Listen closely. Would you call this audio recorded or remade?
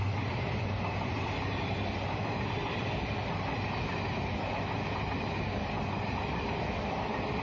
recorded